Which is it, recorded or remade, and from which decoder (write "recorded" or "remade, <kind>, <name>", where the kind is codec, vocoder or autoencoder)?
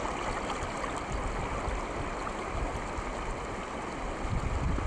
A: recorded